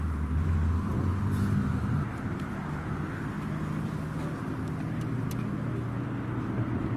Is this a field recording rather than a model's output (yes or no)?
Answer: yes